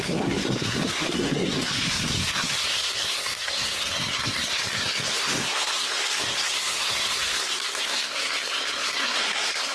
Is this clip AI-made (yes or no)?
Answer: yes